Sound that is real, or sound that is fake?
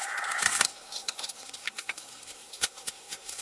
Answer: fake